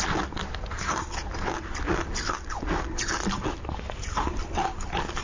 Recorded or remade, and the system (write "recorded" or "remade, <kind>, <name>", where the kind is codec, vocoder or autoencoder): recorded